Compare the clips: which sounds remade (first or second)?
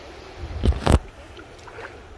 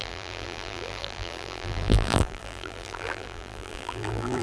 second